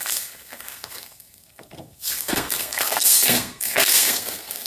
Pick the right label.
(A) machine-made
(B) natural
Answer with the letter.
A